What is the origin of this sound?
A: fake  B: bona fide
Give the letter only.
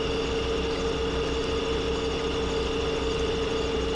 B